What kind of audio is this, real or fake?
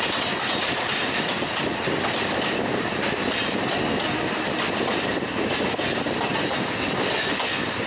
real